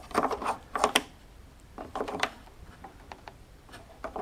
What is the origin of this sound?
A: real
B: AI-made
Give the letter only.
B